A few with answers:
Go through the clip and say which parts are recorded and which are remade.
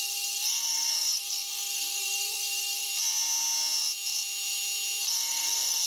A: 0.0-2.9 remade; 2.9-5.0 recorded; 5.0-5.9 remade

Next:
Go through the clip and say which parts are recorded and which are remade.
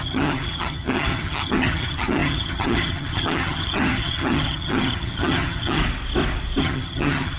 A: 0.0-5.8 remade; 5.8-6.6 recorded; 6.6-7.4 remade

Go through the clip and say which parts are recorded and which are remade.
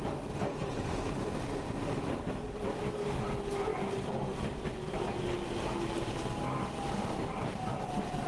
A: 0.0-8.3 recorded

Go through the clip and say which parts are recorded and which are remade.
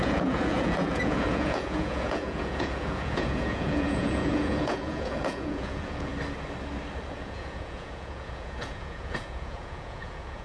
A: 0.0-6.1 remade; 6.1-7.1 recorded; 7.1-10.4 remade